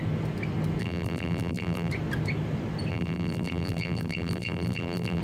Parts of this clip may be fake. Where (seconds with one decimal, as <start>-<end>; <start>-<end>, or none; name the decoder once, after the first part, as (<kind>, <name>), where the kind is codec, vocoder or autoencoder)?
0.8-1.9 (vocoder, BigVGAN v2); 2.9-5.2